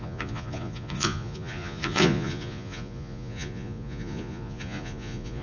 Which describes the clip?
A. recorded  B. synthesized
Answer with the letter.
B